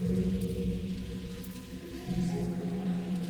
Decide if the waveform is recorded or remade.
remade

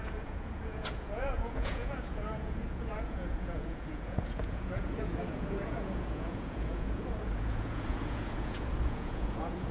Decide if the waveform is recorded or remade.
remade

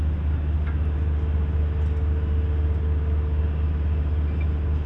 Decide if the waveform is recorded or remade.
recorded